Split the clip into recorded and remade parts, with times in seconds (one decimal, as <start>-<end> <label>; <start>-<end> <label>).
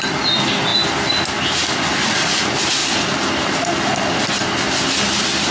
0.0-5.5 recorded